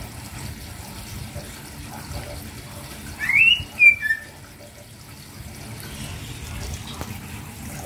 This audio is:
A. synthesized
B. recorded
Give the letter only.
B